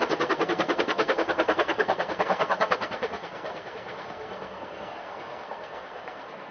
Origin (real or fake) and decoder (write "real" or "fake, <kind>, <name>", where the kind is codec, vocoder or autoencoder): fake, codec, SNAC